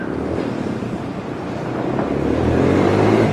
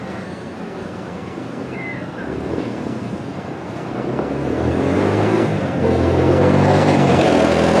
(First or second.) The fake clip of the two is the second